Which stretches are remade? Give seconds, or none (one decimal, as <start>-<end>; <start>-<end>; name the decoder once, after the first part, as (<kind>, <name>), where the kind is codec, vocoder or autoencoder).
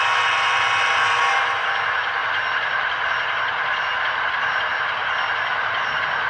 none